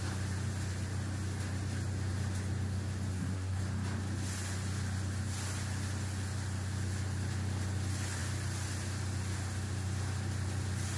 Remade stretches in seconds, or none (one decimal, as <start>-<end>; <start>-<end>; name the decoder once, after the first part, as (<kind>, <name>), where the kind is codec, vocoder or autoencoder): 3.1-3.6 (codec, SNAC)